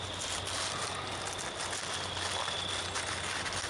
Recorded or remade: recorded